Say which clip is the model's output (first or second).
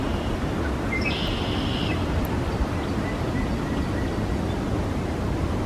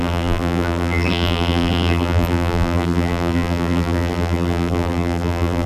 second